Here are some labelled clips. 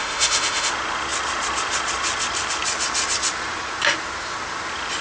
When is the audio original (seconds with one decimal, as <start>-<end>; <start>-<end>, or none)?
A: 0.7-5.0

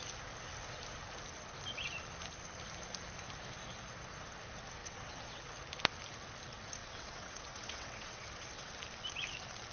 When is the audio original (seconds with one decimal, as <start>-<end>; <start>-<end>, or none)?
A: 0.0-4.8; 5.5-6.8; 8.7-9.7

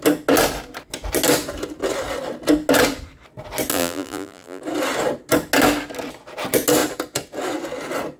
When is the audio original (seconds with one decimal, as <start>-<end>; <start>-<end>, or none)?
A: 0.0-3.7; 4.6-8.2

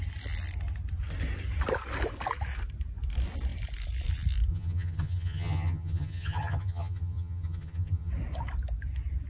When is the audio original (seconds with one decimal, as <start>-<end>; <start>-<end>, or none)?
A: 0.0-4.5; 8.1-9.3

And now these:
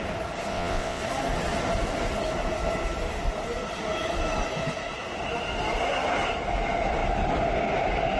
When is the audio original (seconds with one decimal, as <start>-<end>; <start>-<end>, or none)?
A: 0.0-0.5; 1.0-8.2

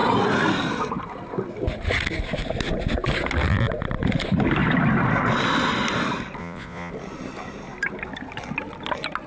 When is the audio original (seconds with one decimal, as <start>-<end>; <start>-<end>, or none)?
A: 0.0-6.4; 6.9-9.3

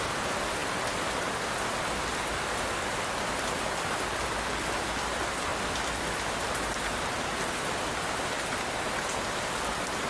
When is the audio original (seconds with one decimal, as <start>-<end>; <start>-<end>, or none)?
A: 0.0-0.6; 1.1-2.1; 3.4-5.5; 8.8-10.1